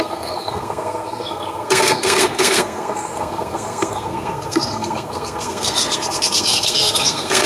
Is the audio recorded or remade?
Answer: remade